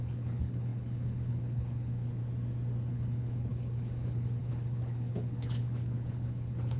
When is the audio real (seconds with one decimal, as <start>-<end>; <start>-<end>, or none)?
2.2-2.9